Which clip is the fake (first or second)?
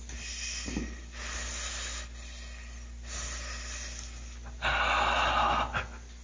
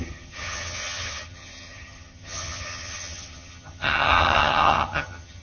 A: second